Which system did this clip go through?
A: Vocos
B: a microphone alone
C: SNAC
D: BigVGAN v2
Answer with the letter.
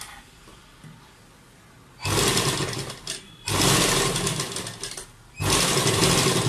B